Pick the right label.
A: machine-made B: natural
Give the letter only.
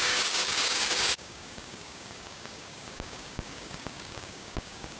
A